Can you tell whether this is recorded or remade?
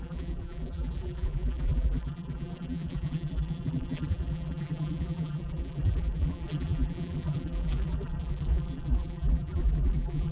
remade